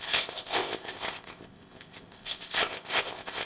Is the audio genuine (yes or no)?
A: no